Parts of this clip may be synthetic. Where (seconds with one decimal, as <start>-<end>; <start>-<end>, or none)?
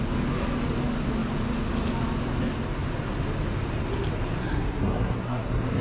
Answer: 4.4-5.8